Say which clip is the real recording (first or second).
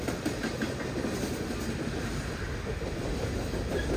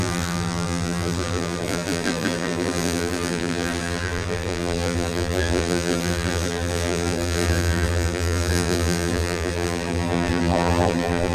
first